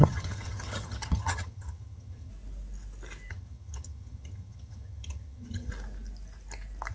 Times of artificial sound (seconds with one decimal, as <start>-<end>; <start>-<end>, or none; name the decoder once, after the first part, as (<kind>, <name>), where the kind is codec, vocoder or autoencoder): 0.0-2.3 (vocoder, HiFi-GAN); 3.3-5.7